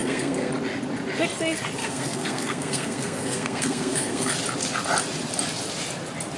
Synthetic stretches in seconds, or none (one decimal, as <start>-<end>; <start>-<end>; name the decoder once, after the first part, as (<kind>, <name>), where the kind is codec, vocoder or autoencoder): 0.0-0.5 (codec, SNAC); 1.8-4.3